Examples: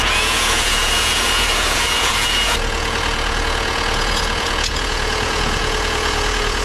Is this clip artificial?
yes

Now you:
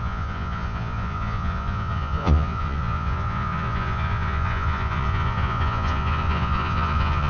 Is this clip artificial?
yes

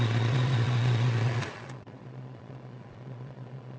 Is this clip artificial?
yes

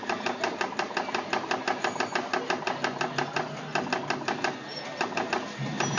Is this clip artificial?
no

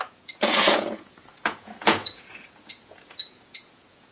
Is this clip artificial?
yes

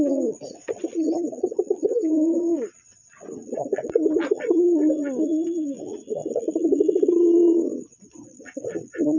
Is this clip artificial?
yes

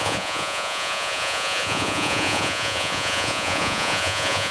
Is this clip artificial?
yes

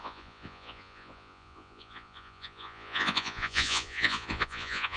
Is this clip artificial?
yes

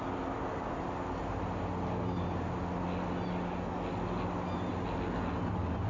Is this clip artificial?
no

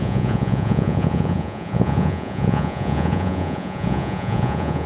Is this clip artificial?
yes